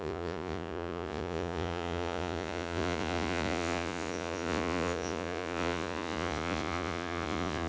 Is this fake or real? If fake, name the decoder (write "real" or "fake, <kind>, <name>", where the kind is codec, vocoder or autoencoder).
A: fake, vocoder, Vocos